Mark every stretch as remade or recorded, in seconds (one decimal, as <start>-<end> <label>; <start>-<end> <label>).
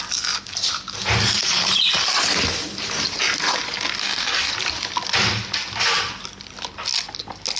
0.0-4.0 recorded; 4.0-4.5 remade; 4.5-7.6 recorded